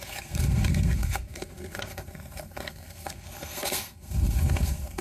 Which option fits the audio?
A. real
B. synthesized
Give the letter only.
B